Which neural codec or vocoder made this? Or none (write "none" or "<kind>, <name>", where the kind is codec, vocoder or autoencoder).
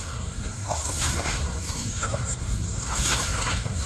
codec, SNAC